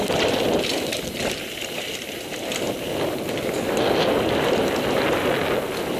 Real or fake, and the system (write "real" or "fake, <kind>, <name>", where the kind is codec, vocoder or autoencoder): real